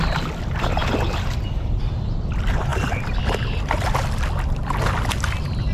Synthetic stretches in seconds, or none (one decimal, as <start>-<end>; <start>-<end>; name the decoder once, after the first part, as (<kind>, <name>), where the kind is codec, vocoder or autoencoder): none